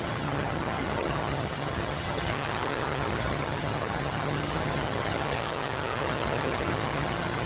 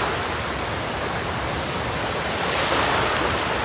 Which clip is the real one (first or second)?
second